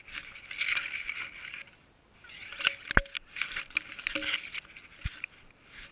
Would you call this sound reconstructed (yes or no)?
no